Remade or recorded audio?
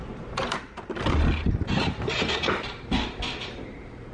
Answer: remade